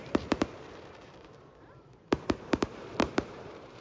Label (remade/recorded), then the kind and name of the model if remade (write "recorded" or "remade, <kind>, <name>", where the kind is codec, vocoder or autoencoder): remade, vocoder, BigVGAN v2